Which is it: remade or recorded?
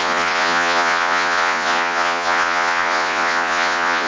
remade